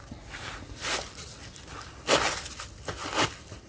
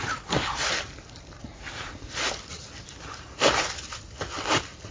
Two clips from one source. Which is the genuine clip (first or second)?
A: first